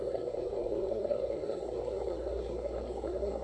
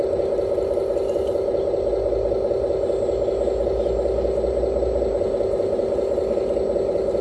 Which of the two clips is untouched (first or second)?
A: second